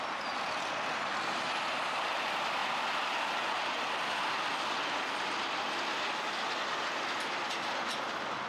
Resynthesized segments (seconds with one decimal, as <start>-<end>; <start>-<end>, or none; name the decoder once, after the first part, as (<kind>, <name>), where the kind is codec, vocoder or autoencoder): none